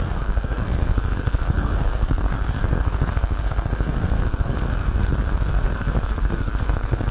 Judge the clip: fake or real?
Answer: fake